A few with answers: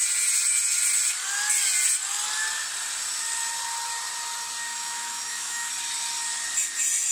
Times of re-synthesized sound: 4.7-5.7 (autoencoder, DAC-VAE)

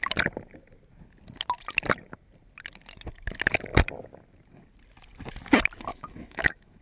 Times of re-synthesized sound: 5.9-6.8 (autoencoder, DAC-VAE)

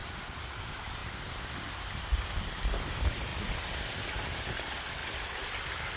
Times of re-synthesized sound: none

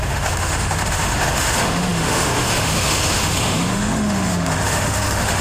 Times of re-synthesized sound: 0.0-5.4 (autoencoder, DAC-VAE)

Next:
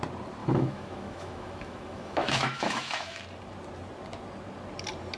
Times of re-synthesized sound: 0.4-3.2 (autoencoder, DAC-VAE)

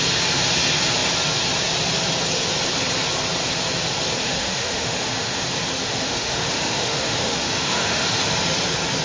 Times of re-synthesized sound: 4.2-5.3 (autoencoder, DAC-VAE); 5.8-8.2

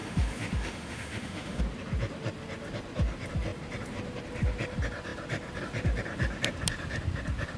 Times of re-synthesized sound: 0.0-1.6 (autoencoder, DAC-VAE)